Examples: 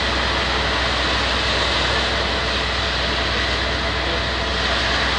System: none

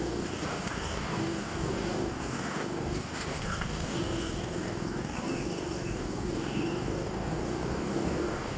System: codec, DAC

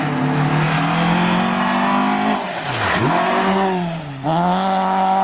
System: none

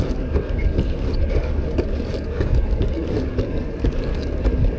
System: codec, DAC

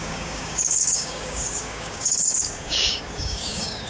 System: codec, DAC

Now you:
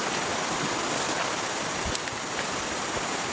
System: none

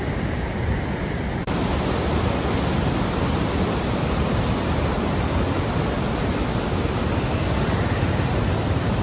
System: none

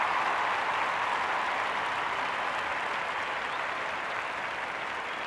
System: none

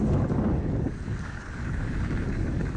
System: codec, DAC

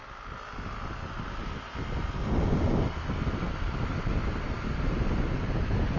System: none